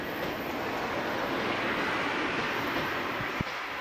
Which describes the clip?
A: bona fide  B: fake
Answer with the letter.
A